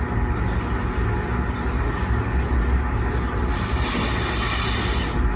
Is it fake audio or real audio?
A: real